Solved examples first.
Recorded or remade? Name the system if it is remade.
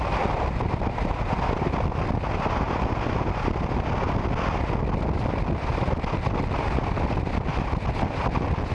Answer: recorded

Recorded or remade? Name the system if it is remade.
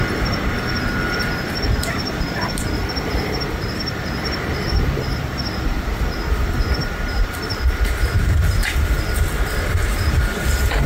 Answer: remade, vocoder, BigVGAN v2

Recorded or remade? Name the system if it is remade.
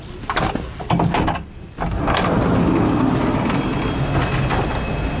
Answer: recorded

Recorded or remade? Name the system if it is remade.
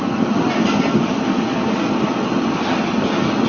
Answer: recorded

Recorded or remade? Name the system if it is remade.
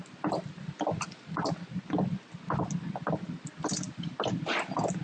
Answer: recorded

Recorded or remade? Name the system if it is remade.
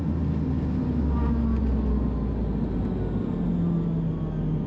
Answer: recorded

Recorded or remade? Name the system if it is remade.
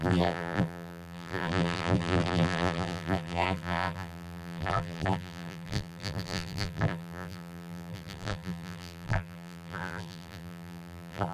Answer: remade, vocoder, BigVGAN v2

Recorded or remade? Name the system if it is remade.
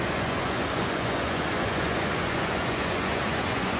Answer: remade, vocoder, Vocos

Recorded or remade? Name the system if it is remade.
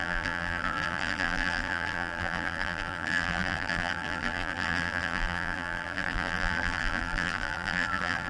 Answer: remade, vocoder, BigVGAN v2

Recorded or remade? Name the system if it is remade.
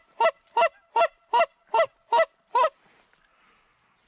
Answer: recorded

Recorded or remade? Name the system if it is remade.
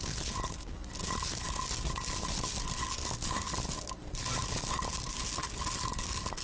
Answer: recorded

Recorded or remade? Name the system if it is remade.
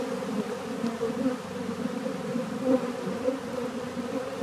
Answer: recorded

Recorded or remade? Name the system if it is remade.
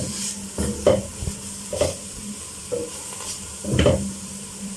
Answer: recorded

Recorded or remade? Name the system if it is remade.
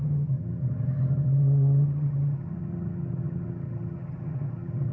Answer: remade, vocoder, HiFi-GAN